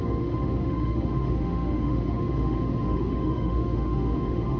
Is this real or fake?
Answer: fake